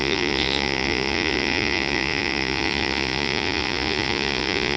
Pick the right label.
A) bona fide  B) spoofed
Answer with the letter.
B